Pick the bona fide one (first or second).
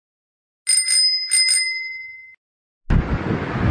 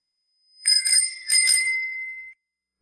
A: first